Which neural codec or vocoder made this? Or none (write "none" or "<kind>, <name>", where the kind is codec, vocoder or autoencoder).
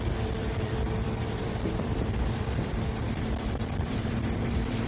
vocoder, BigVGAN v2